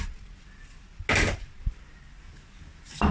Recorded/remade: recorded